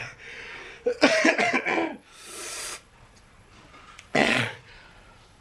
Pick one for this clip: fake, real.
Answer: fake